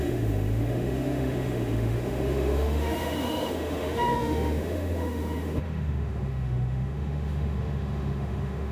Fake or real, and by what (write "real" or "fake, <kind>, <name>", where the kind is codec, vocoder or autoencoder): fake, autoencoder, DAC-VAE